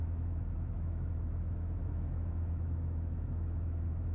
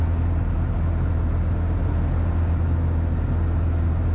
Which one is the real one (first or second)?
second